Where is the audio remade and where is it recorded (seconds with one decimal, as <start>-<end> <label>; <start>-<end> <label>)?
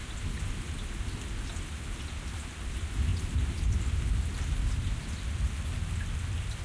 0.0-6.6 recorded